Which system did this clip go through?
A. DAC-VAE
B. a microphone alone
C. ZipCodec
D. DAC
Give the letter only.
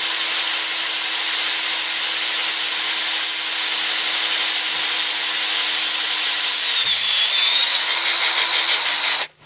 B